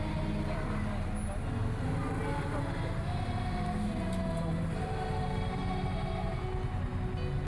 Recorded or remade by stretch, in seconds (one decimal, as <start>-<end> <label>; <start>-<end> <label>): 0.0-7.5 recorded